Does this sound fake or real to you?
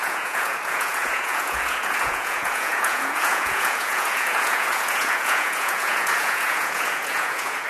fake